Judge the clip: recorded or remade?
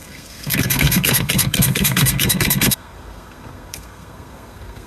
remade